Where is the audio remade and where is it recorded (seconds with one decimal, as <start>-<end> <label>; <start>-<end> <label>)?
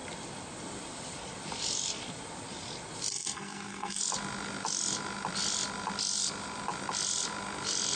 0.0-3.1 recorded; 3.1-4.0 remade; 4.0-8.0 recorded